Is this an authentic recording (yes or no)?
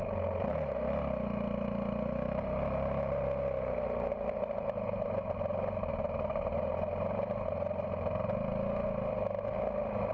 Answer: yes